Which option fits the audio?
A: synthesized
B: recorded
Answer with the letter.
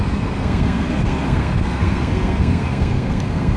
A